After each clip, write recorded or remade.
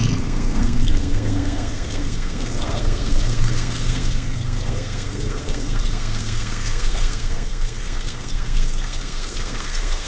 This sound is remade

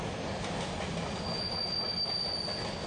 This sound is recorded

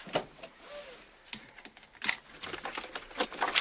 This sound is recorded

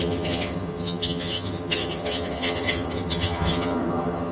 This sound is remade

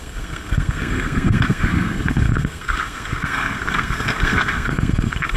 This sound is remade